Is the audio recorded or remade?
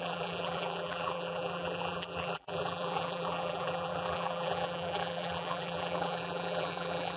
remade